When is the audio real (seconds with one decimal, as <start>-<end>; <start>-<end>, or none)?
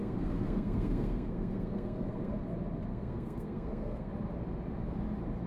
2.3-2.9; 4.1-5.5